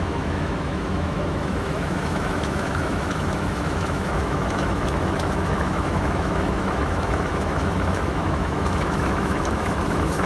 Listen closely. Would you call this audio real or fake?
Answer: fake